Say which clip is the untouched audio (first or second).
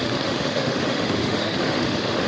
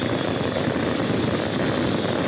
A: second